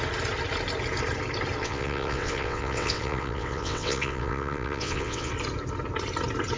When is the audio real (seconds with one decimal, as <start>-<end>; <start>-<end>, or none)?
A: 0.0-1.6; 5.3-6.6